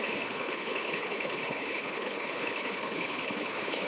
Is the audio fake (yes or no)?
yes